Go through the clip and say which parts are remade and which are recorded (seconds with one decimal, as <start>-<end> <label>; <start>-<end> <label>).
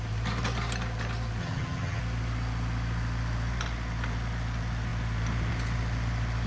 0.0-1.4 recorded; 1.4-2.0 remade; 2.0-6.5 recorded